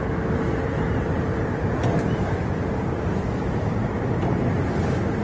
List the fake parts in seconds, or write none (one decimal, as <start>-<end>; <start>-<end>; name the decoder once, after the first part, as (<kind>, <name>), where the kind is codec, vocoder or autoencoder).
1.8-5.2 (vocoder, BigVGAN v2)